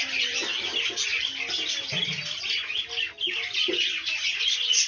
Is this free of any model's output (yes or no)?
yes